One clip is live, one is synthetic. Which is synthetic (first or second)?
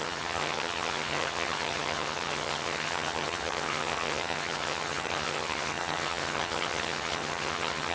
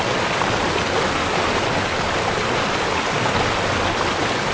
first